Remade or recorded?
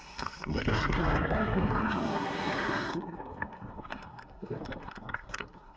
remade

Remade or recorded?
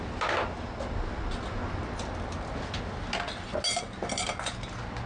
recorded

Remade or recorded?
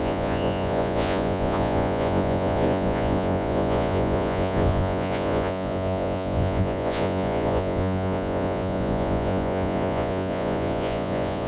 remade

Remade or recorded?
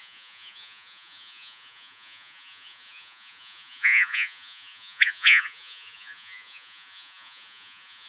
remade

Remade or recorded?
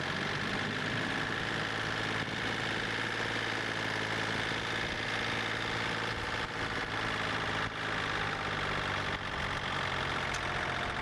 recorded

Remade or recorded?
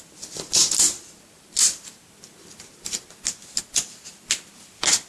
recorded